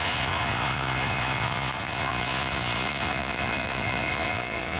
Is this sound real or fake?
fake